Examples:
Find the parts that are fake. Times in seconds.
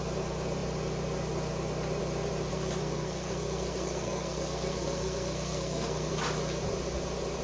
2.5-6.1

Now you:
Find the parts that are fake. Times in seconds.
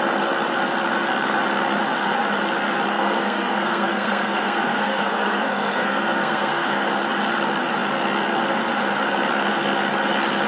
2.9-6.9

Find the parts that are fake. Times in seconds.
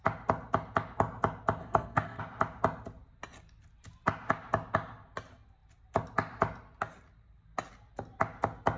1.6-2.2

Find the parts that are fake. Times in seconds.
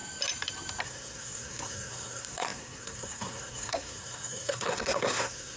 0.8-5.6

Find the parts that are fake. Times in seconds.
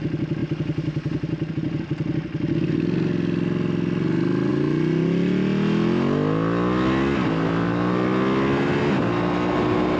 none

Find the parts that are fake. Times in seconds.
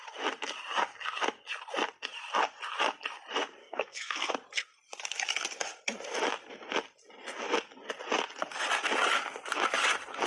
3.6-4.3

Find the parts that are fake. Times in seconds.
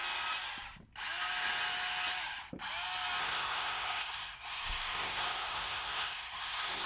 3.2-6.9